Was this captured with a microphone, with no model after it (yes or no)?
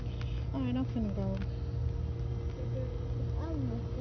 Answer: yes